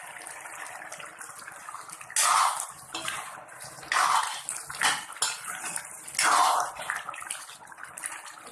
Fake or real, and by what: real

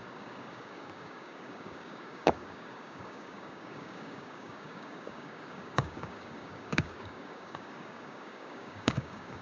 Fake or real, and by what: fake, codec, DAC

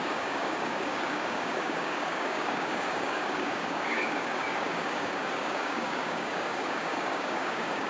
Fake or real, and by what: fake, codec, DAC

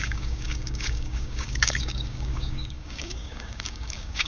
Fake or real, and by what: fake, codec, DAC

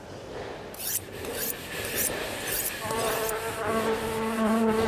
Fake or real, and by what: real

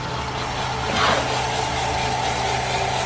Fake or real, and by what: real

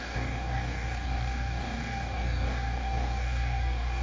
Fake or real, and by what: fake, codec, DAC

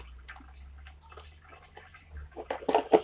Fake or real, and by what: real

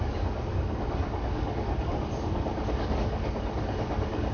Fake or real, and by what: fake, codec, DAC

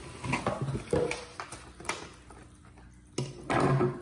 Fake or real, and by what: real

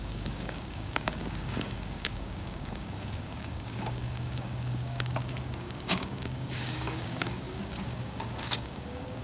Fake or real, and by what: fake, codec, DAC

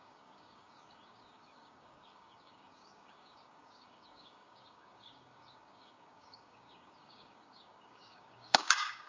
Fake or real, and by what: fake, codec, DAC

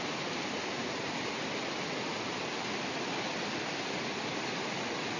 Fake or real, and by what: real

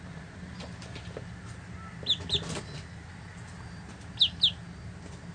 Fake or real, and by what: real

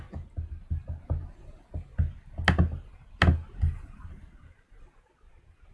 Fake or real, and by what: real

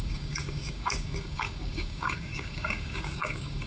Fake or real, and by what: fake, codec, DAC